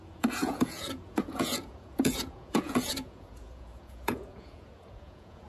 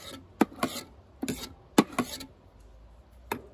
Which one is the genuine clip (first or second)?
second